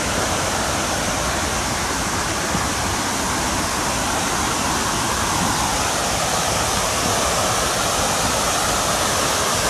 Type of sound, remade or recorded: recorded